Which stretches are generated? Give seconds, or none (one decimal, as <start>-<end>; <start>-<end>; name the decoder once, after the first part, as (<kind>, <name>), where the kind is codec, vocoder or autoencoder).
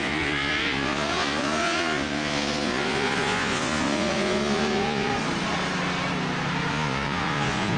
0.0-5.1 (vocoder, Vocos); 6.7-7.8